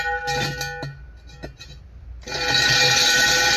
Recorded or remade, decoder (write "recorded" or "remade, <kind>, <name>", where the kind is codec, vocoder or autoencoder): recorded